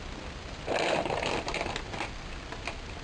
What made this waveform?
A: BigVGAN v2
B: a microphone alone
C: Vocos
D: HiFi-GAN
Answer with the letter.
B